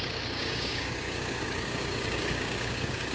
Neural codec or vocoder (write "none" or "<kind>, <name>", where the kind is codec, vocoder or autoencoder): codec, DAC